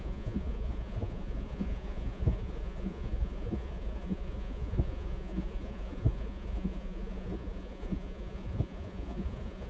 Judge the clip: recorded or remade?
remade